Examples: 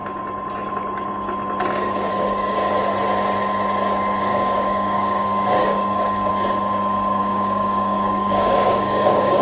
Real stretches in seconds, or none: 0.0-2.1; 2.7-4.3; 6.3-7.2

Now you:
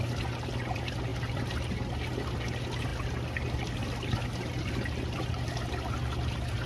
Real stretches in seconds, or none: 0.0-6.7

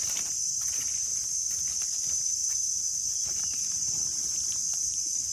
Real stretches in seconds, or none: 1.1-1.7; 2.4-3.6

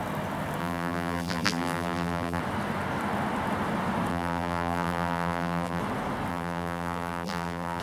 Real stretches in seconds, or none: 0.0-0.6; 2.4-4.1; 5.8-6.3

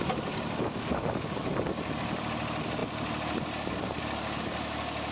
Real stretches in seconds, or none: 0.0-5.1

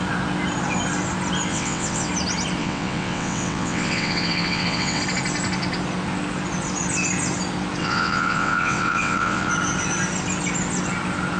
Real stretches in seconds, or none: 0.0-1.5; 2.1-2.6; 5.0-7.8; 9.5-11.4

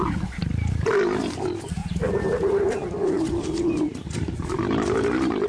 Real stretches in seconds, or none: 0.0-1.8; 3.7-5.5